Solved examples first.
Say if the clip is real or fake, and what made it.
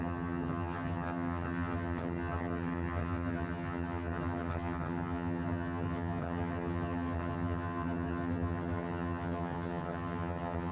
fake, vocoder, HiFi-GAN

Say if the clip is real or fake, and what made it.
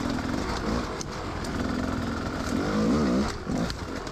real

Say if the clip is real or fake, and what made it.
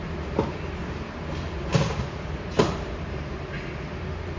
real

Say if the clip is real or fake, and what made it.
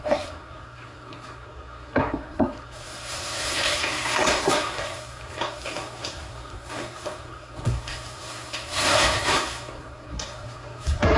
fake, codec, SNAC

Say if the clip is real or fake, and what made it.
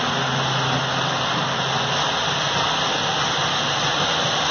real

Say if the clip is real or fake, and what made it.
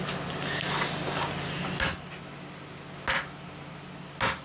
real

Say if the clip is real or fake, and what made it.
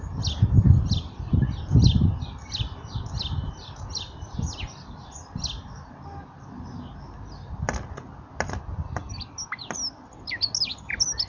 real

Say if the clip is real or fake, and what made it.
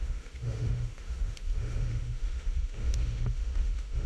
fake, autoencoder, DAC-VAE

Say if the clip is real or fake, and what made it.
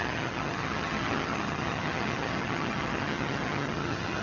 fake, vocoder, HiFi-GAN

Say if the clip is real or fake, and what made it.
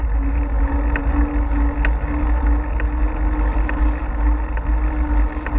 real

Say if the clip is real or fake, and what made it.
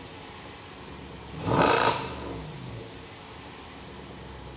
real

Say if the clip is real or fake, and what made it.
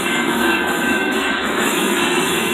fake, codec, SNAC